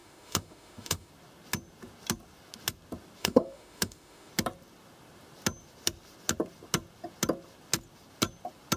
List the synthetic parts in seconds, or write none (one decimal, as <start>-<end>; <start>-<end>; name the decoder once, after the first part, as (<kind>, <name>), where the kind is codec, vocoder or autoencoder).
0.0-1.1 (autoencoder, DAC-VAE); 3.2-4.3